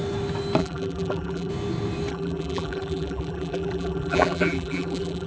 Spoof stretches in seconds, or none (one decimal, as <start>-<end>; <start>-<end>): 0.6-1.5; 2.1-5.3